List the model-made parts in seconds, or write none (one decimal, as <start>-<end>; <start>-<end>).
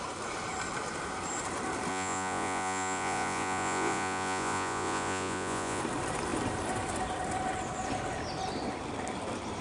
1.9-5.8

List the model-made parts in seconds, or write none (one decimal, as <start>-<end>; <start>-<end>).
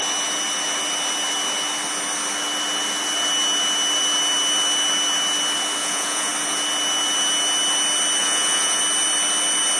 5.8-6.3; 8.2-8.8